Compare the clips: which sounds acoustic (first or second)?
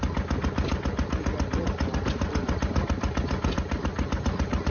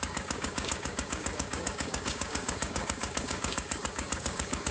first